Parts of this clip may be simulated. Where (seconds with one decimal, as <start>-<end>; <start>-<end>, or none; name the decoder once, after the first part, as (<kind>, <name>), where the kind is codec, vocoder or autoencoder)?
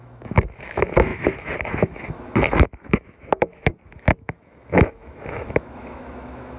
0.0-3.7 (autoencoder, DAC-VAE); 4.2-6.6